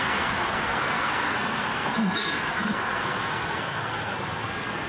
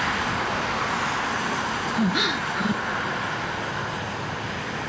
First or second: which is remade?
first